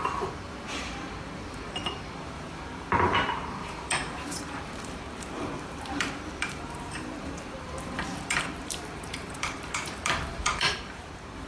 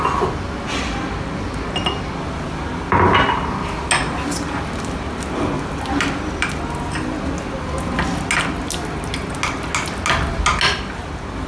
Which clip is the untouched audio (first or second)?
second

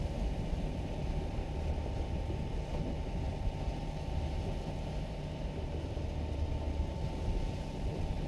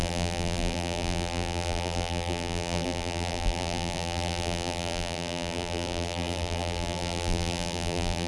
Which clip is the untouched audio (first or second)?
first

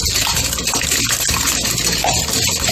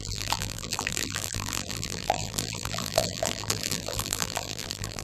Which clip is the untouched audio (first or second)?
first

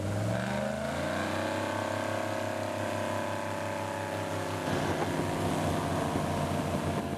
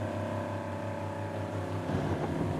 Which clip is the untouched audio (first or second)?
first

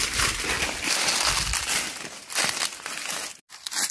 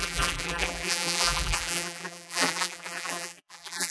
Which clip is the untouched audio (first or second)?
first